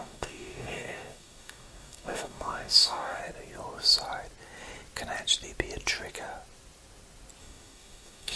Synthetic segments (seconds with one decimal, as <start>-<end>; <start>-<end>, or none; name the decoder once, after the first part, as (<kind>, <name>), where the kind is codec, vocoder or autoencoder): 0.0-3.2 (codec, DAC); 7.4-8.4